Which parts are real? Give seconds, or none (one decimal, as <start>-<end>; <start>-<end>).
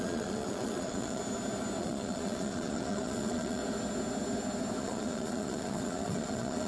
1.2-1.8; 3.6-4.8